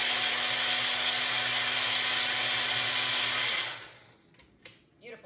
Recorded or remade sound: recorded